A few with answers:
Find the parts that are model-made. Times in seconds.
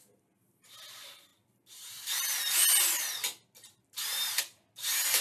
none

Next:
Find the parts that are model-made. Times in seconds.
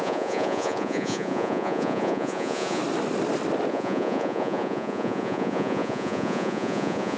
0.0-2.8 (vocoder, Vocos); 3.7-7.2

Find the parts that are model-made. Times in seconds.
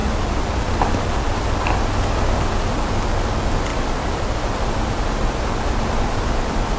0.0-0.8 (vocoder, BigVGAN v2); 3.7-6.8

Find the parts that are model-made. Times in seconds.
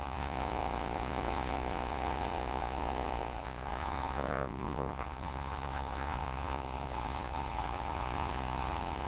0.0-9.1 (vocoder, Vocos)